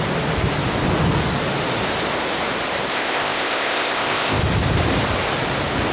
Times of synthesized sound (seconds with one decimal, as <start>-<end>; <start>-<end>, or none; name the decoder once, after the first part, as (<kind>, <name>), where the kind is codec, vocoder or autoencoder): 2.9-4.4 (codec, ZipCodec)